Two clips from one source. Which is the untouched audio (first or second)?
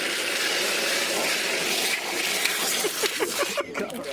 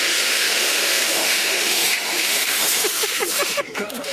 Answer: first